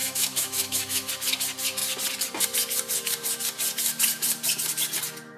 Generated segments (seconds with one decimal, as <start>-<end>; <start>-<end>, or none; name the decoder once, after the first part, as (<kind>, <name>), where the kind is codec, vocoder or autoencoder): 0.0-1.1 (autoencoder, DAC-VAE)